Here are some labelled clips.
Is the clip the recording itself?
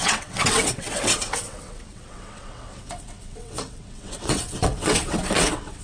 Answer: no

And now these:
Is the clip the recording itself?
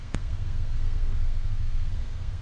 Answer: no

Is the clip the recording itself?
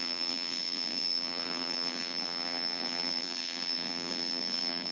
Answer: no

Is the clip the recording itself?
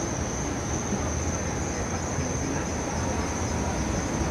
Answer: yes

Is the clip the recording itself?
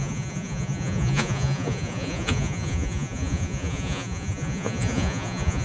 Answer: no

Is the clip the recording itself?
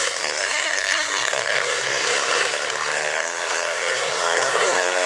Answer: no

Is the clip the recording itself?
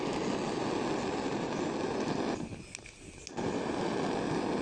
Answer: yes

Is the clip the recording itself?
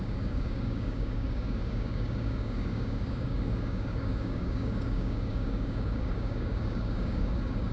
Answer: no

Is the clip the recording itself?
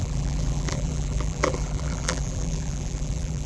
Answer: no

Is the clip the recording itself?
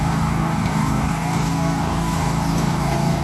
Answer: no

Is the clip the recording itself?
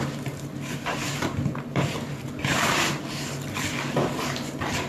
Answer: no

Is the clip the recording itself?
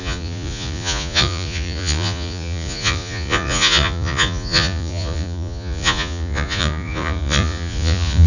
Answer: no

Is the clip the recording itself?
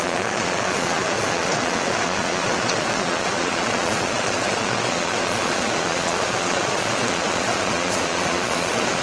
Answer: no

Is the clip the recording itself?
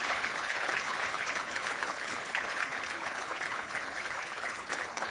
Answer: no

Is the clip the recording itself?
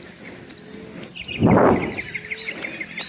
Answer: yes